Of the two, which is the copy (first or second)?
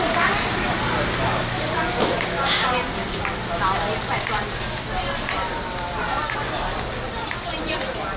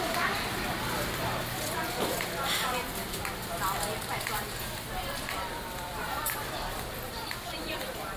second